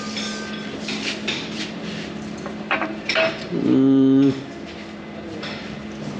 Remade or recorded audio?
remade